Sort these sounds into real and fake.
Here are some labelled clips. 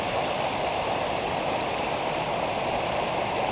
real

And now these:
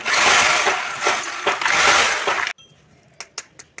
real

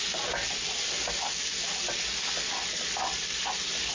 real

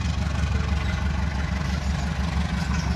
real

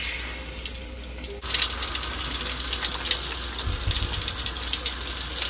real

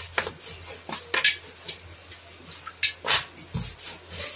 real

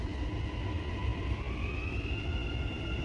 real